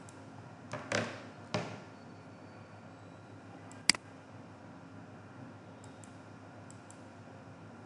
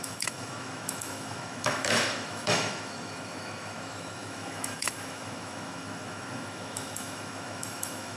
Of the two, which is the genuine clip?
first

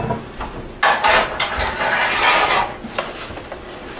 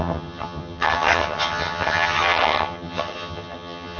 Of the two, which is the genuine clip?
first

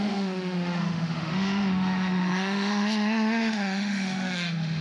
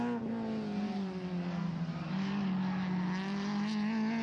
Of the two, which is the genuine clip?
second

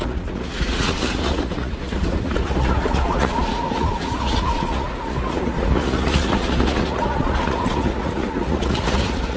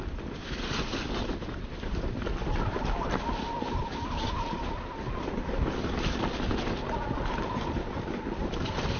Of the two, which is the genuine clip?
second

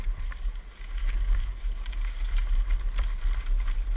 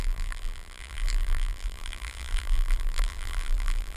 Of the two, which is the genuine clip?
first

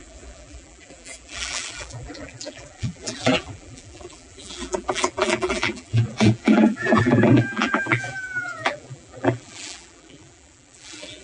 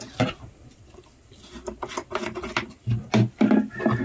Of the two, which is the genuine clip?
second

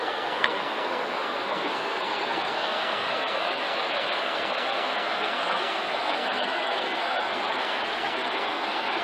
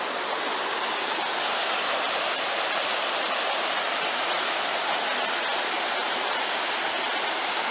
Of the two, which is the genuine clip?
second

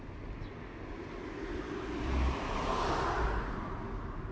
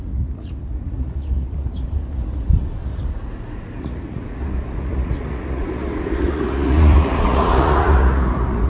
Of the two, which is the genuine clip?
first